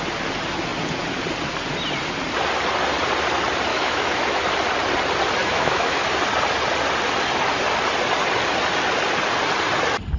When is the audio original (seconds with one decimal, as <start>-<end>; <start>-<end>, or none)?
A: 0.0-3.7; 4.4-5.4; 6.0-10.2